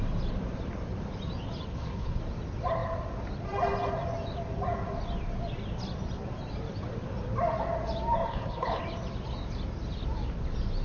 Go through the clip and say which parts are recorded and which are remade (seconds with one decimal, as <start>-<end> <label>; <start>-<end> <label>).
0.0-1.7 recorded; 1.7-2.2 remade; 2.2-8.3 recorded; 8.3-8.8 remade; 8.8-10.8 recorded